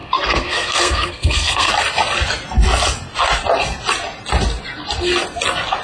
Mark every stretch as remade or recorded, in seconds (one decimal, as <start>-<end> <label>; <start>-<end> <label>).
0.0-1.7 remade; 1.7-5.8 recorded